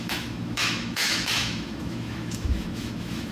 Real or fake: fake